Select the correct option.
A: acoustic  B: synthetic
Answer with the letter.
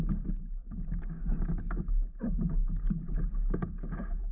A